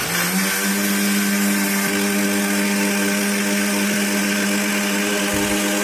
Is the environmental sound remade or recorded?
recorded